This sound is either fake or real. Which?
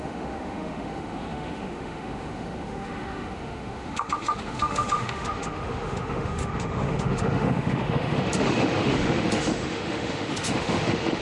fake